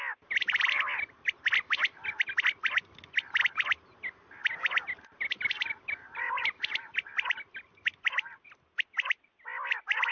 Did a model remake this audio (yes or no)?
no